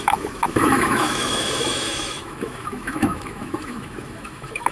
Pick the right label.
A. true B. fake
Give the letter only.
B